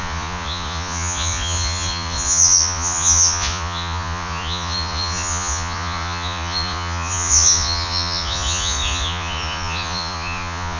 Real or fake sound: fake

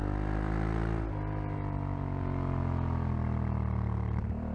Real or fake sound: real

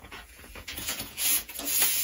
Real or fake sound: fake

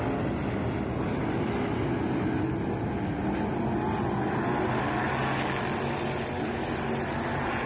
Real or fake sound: real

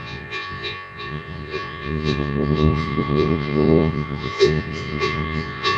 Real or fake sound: fake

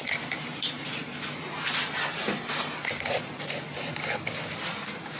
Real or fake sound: real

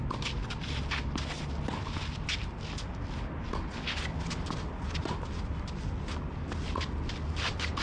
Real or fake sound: real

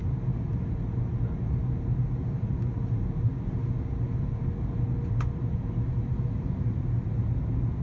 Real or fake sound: real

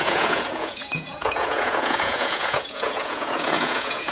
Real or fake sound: fake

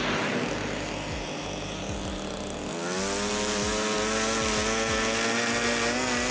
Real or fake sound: real